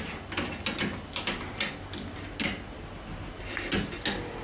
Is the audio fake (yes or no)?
no